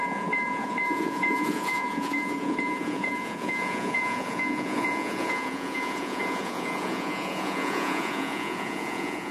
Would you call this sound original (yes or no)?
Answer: no